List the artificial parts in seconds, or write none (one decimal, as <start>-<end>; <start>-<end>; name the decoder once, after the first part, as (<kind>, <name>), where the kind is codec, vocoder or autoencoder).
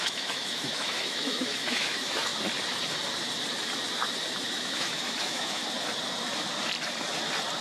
0.0-2.3 (autoencoder, DAC-VAE); 4.5-5.6